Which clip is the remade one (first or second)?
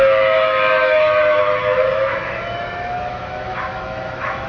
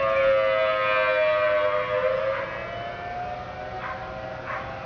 first